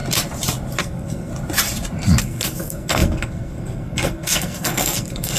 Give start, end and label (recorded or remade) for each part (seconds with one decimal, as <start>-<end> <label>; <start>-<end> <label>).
0.0-0.8 recorded; 0.8-1.3 remade; 1.3-2.2 recorded; 2.2-5.4 remade

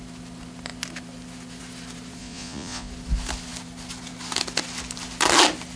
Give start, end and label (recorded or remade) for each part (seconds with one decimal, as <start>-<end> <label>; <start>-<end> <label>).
0.0-2.2 recorded; 2.2-2.9 remade; 2.9-5.8 recorded

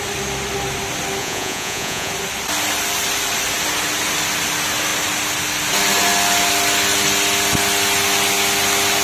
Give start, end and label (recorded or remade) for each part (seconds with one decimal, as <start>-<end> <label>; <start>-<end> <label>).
0.0-1.2 recorded; 1.2-2.1 remade; 2.1-9.0 recorded

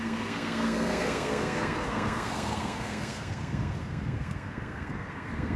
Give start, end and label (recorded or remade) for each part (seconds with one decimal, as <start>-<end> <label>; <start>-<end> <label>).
0.0-5.6 remade

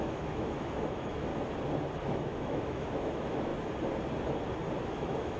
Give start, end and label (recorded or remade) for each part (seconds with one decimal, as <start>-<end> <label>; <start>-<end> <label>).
0.0-1.3 remade; 1.3-2.0 recorded; 2.0-3.5 remade; 3.5-4.8 recorded; 4.8-5.4 remade

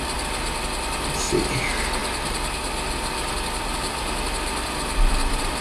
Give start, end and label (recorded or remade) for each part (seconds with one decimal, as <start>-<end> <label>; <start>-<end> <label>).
0.0-5.6 recorded

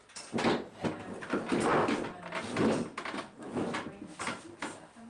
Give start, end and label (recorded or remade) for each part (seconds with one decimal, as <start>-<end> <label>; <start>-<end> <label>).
0.0-5.1 recorded